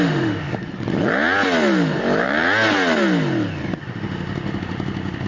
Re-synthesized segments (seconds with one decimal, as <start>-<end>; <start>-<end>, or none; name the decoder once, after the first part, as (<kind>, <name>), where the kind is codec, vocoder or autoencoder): 0.0-0.6 (autoencoder, DAC-VAE); 3.8-5.3